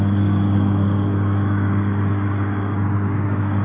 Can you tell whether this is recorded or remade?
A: remade